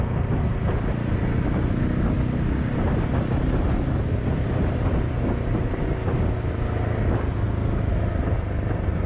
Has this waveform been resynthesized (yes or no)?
no